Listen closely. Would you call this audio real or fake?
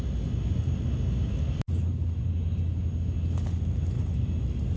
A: real